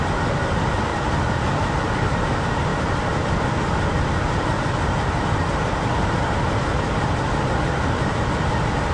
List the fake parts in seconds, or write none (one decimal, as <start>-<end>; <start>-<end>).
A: none